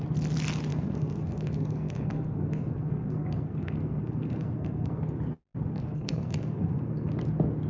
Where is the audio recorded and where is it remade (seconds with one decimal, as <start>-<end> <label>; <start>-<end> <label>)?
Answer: 0.0-0.7 recorded; 0.7-5.0 remade; 5.0-5.7 recorded; 5.7-7.1 remade; 7.1-7.7 recorded